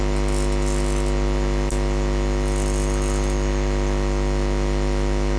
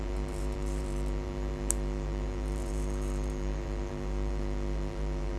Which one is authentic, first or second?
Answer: first